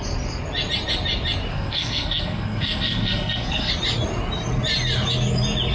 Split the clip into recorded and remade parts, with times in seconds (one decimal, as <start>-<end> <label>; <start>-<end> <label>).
0.0-1.5 recorded; 1.5-3.7 remade; 3.7-5.7 recorded